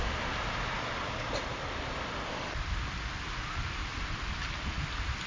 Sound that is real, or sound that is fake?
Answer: real